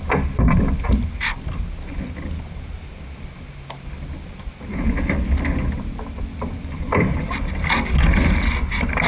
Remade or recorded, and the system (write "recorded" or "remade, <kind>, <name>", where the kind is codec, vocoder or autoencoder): recorded